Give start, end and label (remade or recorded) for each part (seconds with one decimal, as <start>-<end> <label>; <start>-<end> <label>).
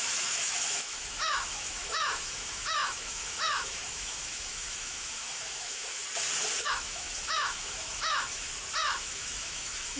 0.0-6.0 remade; 6.0-6.6 recorded; 6.6-8.5 remade; 8.5-9.0 recorded; 9.0-10.0 remade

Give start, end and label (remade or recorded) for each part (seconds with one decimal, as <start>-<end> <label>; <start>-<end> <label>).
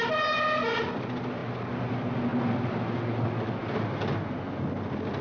0.0-5.2 recorded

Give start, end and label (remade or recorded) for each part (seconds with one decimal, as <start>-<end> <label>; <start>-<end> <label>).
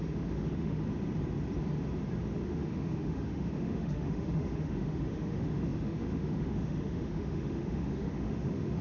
0.0-0.8 remade; 0.8-2.4 recorded; 2.4-8.8 remade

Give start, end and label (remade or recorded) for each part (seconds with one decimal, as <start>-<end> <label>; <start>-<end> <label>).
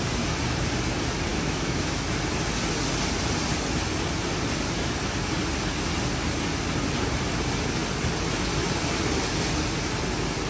0.0-1.3 recorded; 1.3-1.9 remade; 1.9-10.5 recorded